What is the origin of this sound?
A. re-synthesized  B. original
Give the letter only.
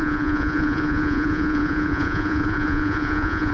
A